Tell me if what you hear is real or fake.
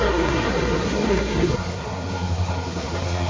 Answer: fake